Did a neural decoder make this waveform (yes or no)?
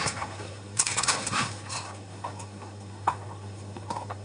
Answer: yes